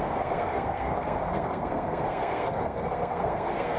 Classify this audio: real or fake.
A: fake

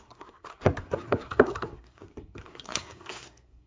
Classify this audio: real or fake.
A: fake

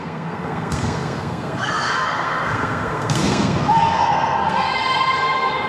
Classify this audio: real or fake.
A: fake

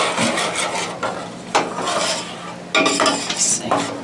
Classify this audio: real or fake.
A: real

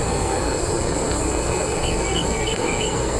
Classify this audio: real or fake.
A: fake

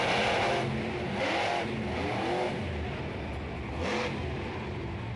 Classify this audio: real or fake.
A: real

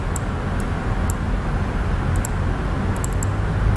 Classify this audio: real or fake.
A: real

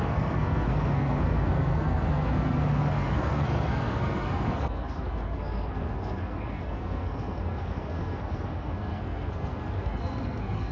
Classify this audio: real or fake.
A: fake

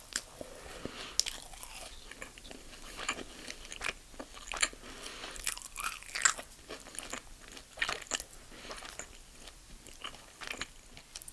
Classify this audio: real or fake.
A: real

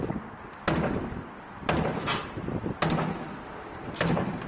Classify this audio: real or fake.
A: real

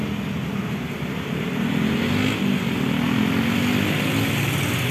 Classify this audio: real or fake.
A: real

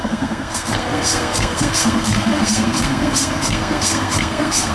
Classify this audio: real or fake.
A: fake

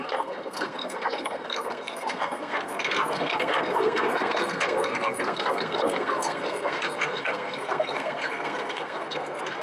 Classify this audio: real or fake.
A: fake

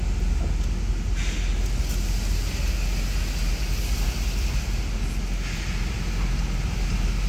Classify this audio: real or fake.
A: real